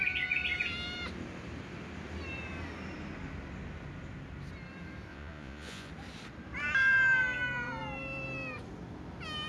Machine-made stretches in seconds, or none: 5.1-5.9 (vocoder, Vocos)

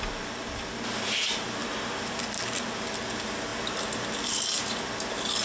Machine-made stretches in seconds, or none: none

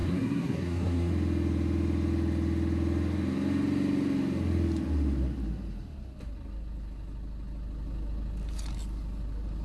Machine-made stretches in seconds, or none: 0.0-1.1 (codec, SNAC)